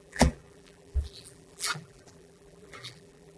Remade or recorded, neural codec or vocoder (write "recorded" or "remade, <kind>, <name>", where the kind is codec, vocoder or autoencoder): remade, vocoder, BigVGAN v2